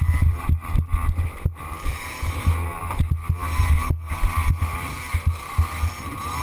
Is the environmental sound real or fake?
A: real